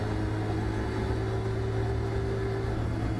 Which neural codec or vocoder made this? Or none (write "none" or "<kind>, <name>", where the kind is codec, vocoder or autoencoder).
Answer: none